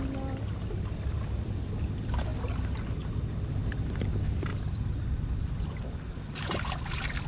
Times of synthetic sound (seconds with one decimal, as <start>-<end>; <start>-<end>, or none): 4.5-5.5